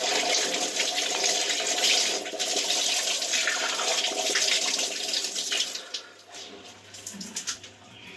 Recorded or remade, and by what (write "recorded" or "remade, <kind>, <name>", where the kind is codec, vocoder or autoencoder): recorded